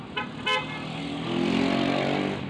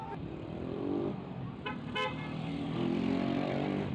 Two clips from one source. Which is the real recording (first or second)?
first